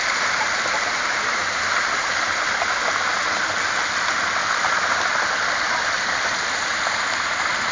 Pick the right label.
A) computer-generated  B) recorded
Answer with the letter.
B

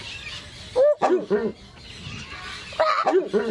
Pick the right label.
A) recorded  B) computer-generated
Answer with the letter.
A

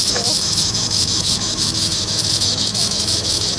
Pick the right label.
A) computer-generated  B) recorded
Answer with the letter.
A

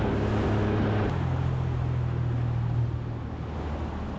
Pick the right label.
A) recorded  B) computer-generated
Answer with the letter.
A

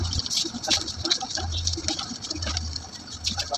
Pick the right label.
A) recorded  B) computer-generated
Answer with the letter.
A